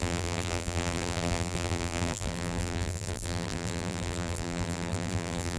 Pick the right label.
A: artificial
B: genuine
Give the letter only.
A